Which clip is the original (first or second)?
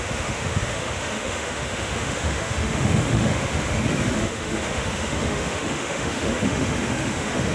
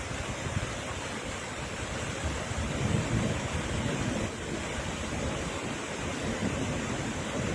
second